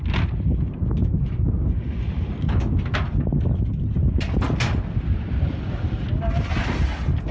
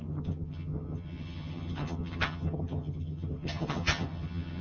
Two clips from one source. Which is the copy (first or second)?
second